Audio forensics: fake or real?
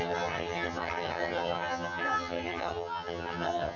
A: fake